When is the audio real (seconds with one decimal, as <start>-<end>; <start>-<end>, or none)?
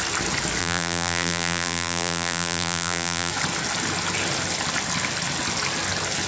0.0-0.6; 3.3-6.3